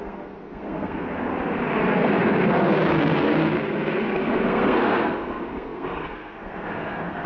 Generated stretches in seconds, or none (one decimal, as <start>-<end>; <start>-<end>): 0.0-1.1; 1.8-7.3